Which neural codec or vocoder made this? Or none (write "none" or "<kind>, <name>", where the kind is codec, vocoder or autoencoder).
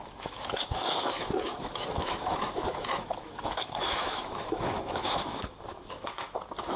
autoencoder, DAC-VAE